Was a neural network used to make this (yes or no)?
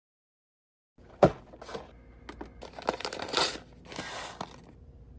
no